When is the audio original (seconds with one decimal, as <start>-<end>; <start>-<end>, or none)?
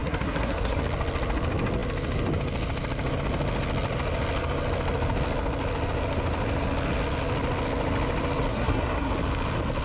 0.8-8.5; 9.1-9.8